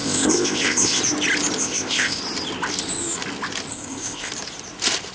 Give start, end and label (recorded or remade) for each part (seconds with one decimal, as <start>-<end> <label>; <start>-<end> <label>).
0.0-1.0 remade; 1.0-1.6 recorded; 1.6-2.2 remade; 2.2-3.7 recorded; 3.7-4.3 remade; 4.3-5.1 recorded